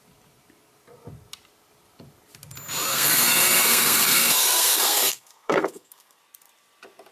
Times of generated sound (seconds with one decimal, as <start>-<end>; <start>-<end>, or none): 2.9-6.2